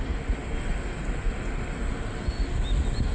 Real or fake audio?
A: real